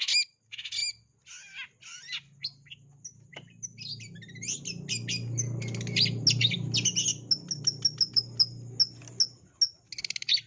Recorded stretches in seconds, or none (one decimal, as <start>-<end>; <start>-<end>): 0.0-10.5